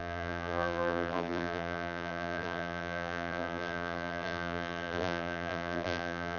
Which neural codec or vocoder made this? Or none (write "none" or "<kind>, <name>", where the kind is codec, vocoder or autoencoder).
vocoder, BigVGAN v2